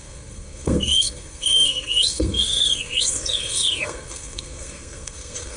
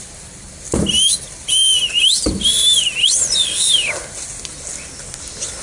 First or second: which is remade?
first